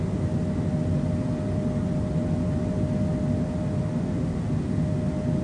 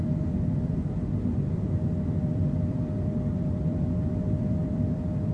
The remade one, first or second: second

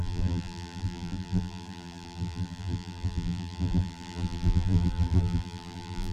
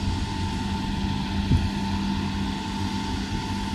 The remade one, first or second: first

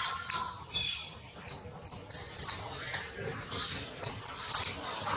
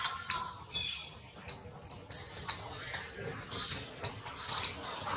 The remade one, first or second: first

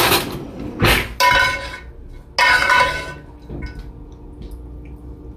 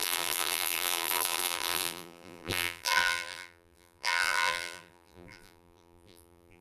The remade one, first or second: second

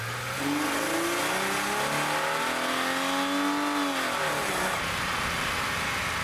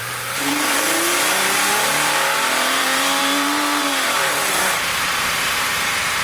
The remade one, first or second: second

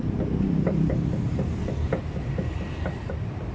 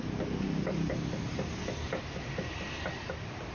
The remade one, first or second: first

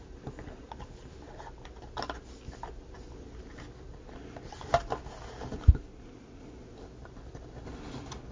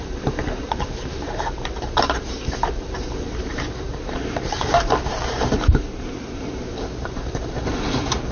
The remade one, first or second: second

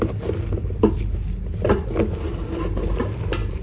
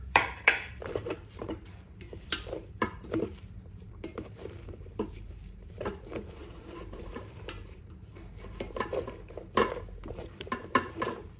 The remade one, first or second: second